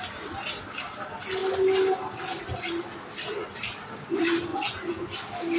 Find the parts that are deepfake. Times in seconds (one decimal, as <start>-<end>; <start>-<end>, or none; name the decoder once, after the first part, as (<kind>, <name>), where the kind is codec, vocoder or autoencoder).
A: 4.5-5.1 (vocoder, Vocos)